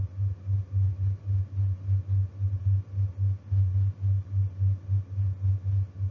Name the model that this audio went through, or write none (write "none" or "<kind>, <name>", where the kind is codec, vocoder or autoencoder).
none